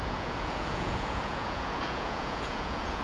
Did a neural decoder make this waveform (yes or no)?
yes